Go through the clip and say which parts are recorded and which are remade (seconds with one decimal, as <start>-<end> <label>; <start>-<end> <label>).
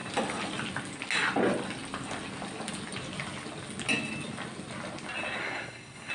0.0-5.4 recorded; 5.4-6.1 remade